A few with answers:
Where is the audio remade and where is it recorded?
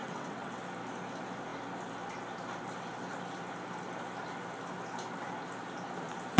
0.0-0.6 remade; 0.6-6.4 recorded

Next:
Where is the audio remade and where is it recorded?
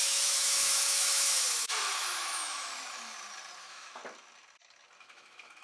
0.0-2.7 remade; 2.7-3.6 recorded; 3.6-4.0 remade; 4.0-5.0 recorded; 5.0-5.6 remade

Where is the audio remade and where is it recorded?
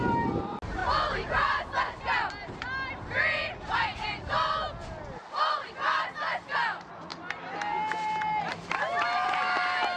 0.0-10.0 recorded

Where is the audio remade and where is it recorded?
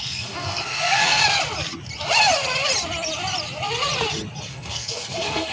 0.0-1.2 remade; 1.2-4.5 recorded; 4.5-5.5 remade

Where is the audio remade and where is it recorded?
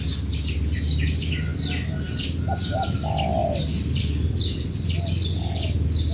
0.0-6.1 recorded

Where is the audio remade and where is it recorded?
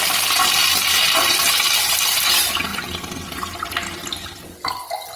0.0-0.6 recorded; 0.6-1.9 remade; 1.9-5.2 recorded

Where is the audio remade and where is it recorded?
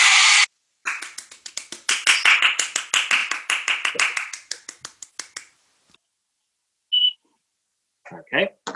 0.0-3.2 recorded; 3.2-3.9 remade; 3.9-8.8 recorded